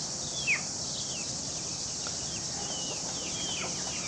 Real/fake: real